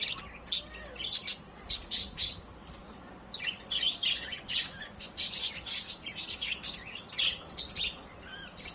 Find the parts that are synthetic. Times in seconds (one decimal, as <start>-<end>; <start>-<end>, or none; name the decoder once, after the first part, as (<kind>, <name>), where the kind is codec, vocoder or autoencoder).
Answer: 2.8-5.5 (vocoder, Vocos)

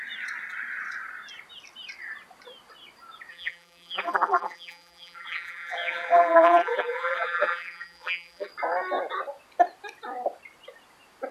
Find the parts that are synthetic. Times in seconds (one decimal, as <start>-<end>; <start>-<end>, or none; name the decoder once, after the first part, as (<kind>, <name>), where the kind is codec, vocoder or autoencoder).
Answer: 3.3-8.5 (vocoder, BigVGAN v2)

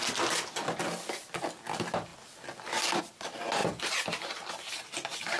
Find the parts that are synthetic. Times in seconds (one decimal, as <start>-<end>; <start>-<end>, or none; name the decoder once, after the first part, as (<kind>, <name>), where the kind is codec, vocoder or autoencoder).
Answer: none

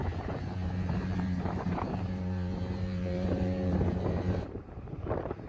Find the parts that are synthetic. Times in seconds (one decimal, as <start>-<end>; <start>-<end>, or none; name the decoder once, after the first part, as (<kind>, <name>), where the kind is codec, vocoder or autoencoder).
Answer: 0.0-5.5 (vocoder, BigVGAN v2)

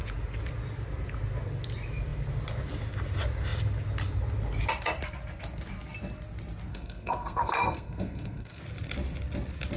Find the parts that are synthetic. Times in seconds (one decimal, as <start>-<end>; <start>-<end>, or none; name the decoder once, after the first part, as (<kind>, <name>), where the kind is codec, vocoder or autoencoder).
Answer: 6.7-8.6 (codec, SNAC)

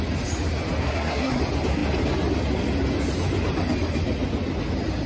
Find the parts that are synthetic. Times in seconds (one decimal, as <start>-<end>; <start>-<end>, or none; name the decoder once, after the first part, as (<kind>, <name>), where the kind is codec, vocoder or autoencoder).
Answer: 0.8-1.4 (codec, SNAC)

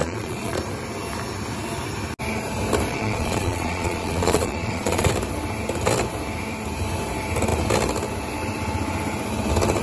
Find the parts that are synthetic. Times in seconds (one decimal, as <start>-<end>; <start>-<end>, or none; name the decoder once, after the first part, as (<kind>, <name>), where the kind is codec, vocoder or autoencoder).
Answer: 0.0-0.6 (vocoder, Vocos); 2.9-5.1